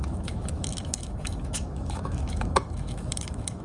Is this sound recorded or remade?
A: remade